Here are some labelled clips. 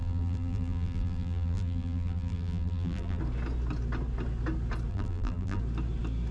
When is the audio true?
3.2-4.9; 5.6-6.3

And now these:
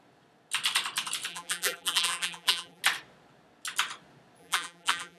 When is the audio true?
0.0-1.3; 2.8-4.4

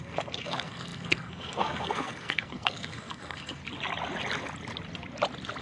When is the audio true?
3.6-5.6

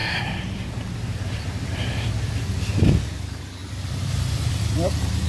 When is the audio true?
2.9-5.3